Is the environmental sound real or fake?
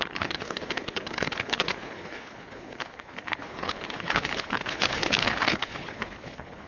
fake